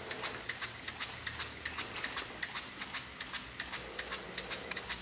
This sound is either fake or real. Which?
real